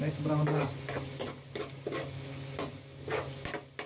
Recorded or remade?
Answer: recorded